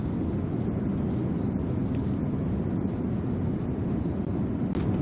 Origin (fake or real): real